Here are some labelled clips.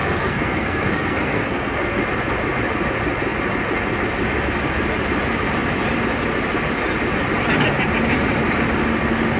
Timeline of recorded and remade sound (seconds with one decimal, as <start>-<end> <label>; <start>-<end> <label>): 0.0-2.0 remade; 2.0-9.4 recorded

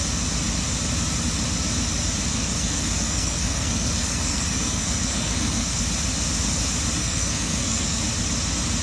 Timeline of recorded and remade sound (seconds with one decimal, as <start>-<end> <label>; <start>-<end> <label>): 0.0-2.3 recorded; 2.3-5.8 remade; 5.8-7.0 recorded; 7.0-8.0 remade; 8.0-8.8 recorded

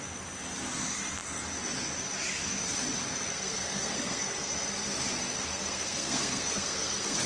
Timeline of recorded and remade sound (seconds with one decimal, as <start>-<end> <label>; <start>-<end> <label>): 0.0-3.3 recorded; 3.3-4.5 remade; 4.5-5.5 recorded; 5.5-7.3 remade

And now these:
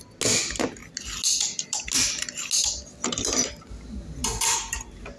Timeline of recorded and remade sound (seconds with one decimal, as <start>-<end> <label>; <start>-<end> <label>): 0.0-5.2 recorded

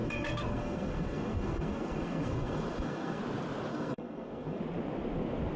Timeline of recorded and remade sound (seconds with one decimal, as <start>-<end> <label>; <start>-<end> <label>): 0.0-3.2 remade; 3.2-3.7 recorded; 3.7-4.6 remade; 4.6-5.6 recorded